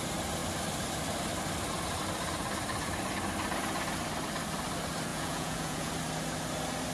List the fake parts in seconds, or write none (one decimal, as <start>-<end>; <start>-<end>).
5.1-5.9

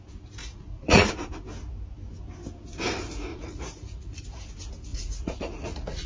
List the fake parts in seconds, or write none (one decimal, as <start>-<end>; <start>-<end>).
0.4-1.1; 3.3-4.2; 4.9-6.1